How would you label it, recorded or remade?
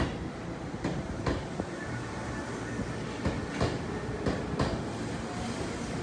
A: recorded